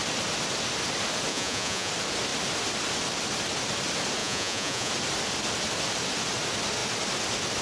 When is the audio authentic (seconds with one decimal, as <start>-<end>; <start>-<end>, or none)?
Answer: 0.0-1.3; 1.9-4.2; 4.9-7.6